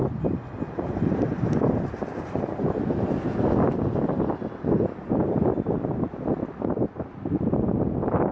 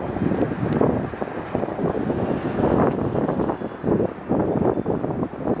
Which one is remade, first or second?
first